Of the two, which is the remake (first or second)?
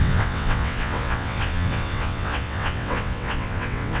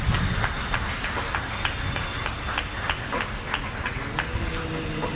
first